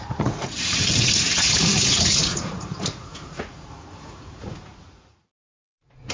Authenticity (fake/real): fake